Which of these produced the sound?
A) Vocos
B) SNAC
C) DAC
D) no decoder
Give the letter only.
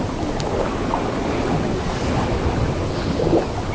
D